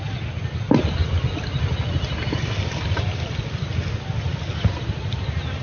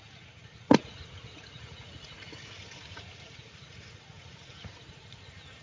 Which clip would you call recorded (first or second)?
first